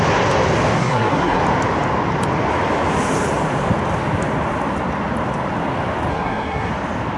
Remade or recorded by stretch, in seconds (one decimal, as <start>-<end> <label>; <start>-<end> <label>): 0.0-0.8 recorded; 0.8-1.4 remade; 1.4-6.1 recorded; 6.1-6.7 remade; 6.7-7.2 recorded